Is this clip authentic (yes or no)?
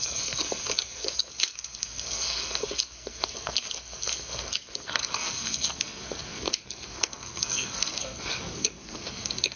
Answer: no